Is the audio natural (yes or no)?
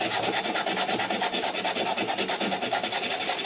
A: yes